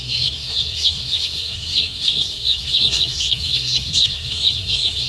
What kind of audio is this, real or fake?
fake